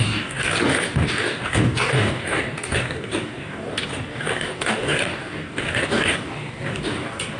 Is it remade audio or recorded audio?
remade